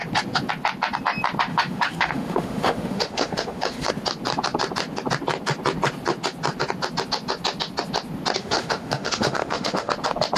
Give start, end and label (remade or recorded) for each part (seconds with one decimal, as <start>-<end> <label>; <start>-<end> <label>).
0.0-1.5 recorded; 1.5-3.9 remade; 3.9-8.4 recorded; 8.4-9.9 remade; 9.9-10.4 recorded